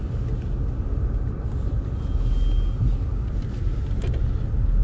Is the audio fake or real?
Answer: real